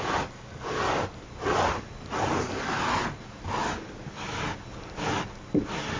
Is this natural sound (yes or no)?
yes